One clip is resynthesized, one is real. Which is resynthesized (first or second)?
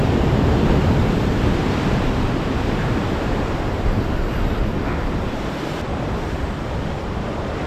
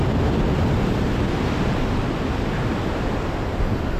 first